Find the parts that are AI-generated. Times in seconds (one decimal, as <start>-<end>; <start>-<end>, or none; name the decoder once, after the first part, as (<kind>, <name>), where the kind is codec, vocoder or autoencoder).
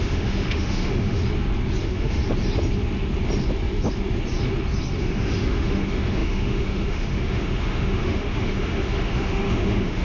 0.0-1.2 (autoencoder, DAC-VAE); 1.8-2.2; 5.0-10.0